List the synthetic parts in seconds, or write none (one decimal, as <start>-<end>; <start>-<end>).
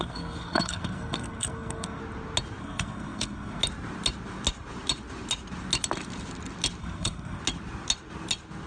0.0-2.0; 2.6-3.6; 6.8-7.4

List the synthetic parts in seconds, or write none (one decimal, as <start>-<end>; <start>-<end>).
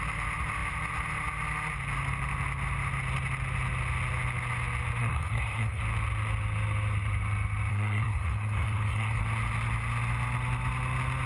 5.0-5.8; 7.7-9.2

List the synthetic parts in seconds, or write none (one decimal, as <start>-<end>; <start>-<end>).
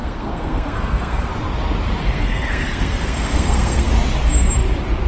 0.0-1.3; 2.0-3.9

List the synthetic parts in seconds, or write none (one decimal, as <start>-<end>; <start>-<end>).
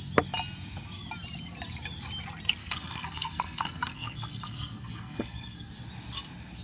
2.6-5.7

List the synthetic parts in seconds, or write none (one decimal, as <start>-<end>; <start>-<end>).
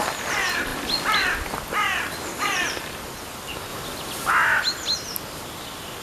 none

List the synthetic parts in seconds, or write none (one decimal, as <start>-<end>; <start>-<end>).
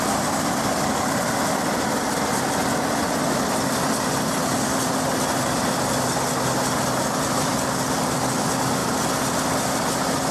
none